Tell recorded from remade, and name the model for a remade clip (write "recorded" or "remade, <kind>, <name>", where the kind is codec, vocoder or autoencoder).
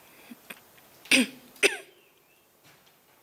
recorded